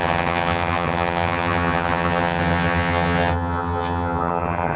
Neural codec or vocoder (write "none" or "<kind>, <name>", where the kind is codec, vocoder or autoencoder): vocoder, HiFi-GAN